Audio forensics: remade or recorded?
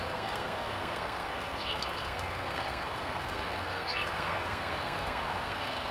remade